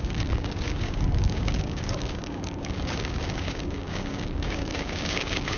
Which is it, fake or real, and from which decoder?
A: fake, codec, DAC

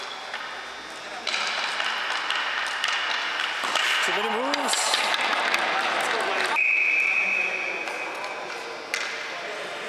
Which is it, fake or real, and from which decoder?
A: real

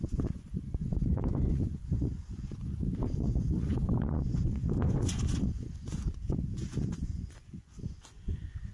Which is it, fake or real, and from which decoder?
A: fake, vocoder, Vocos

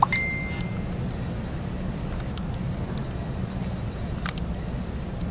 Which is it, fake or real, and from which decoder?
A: real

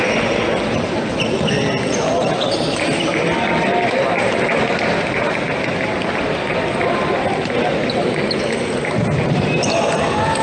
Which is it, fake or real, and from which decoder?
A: real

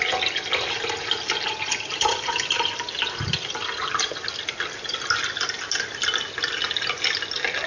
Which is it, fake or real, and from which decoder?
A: real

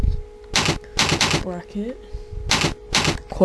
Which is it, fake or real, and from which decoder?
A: real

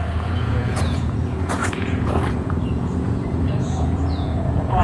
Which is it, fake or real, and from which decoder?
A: fake, vocoder, Vocos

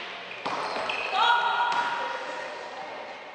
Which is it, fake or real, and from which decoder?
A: real